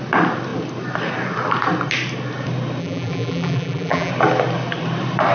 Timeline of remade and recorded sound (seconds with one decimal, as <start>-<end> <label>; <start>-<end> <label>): 0.0-2.8 recorded; 2.8-4.1 remade; 4.1-5.3 recorded